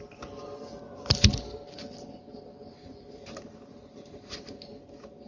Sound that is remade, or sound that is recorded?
recorded